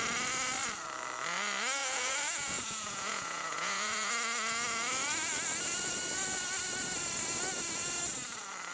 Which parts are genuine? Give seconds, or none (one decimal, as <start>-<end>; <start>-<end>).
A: 0.0-1.8; 4.1-8.7